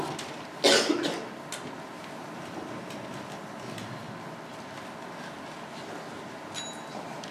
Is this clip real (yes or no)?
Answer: yes